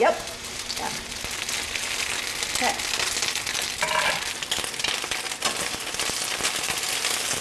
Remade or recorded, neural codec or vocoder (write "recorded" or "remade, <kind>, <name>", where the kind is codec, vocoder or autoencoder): recorded